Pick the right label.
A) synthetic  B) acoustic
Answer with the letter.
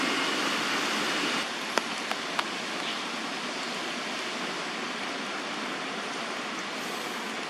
B